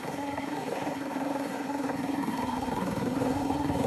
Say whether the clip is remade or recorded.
remade